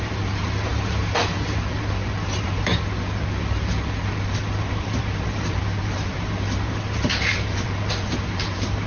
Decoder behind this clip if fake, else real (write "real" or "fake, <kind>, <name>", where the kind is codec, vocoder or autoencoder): fake, vocoder, BigVGAN v2